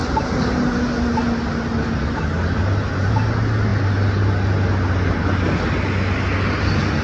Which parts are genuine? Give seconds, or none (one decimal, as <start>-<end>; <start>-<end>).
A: 0.0-7.0